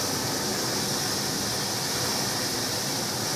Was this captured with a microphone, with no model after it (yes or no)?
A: yes